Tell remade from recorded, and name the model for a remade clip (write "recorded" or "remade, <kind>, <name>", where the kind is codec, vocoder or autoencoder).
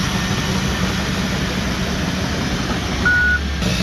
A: recorded